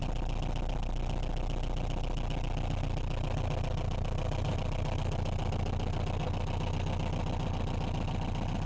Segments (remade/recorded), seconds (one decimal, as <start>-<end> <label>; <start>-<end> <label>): 0.0-8.7 recorded